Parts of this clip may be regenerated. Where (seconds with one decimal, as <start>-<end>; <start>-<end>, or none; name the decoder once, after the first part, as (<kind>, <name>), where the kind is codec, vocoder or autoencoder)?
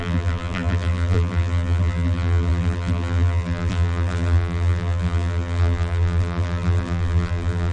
0.0-7.7 (vocoder, BigVGAN v2)